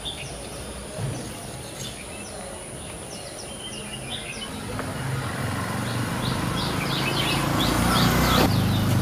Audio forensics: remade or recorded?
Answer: recorded